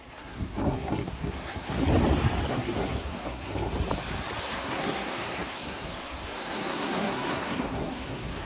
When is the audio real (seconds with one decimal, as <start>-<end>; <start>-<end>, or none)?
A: 1.8-2.5; 3.7-4.4